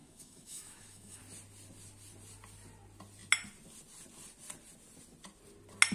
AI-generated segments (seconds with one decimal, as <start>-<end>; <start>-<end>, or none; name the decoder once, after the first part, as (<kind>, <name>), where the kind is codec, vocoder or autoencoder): 0.0-1.2 (autoencoder, DAC-VAE)